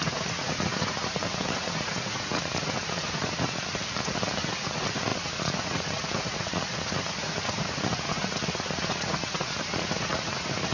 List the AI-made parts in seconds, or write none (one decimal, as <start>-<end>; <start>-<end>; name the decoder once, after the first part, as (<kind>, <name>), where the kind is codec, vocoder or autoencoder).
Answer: 0.0-3.8 (vocoder, Vocos); 4.4-10.7